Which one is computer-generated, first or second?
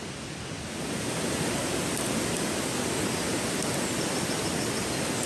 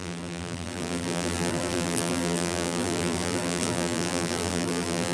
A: second